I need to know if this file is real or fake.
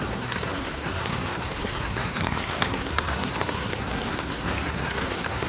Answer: fake